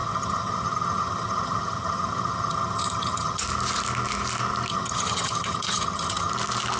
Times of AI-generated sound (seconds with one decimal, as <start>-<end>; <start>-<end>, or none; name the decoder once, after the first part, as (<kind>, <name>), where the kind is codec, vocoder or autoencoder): 0.0-3.4 (vocoder, HiFi-GAN); 4.7-6.3